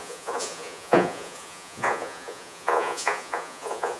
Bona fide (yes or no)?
no